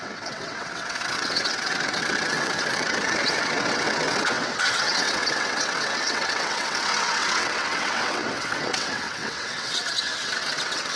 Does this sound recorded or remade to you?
remade